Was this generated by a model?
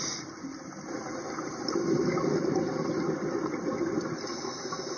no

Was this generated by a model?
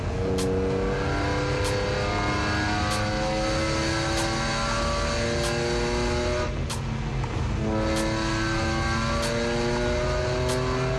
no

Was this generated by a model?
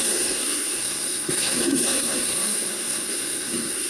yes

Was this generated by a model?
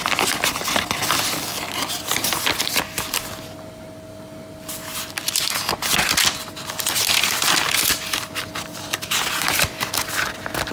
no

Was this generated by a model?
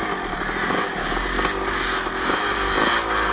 no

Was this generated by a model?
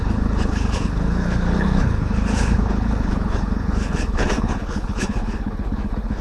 yes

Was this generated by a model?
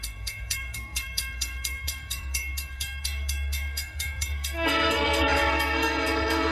yes